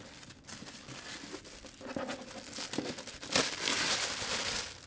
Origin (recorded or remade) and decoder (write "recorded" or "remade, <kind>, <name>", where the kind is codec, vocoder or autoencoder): recorded